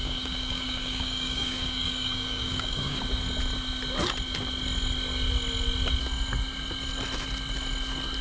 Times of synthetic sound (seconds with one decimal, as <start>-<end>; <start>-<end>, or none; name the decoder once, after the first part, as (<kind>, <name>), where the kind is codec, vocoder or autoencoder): 0.0-3.0 (codec, DAC)